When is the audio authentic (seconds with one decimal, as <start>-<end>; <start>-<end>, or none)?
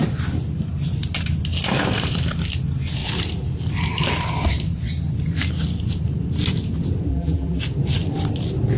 0.0-7.1; 7.6-8.8